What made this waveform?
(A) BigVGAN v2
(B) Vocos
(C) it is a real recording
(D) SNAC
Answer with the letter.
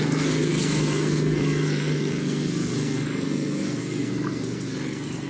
D